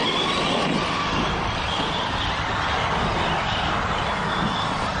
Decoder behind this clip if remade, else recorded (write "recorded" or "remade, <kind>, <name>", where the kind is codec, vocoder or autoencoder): recorded